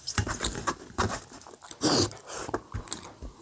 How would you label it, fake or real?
real